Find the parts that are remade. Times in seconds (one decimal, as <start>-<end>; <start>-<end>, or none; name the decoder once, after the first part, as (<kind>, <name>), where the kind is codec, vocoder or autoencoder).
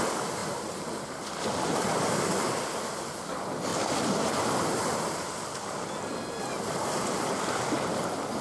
none